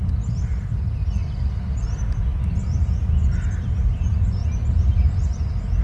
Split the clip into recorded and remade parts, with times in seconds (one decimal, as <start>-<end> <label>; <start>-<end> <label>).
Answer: 0.0-5.8 recorded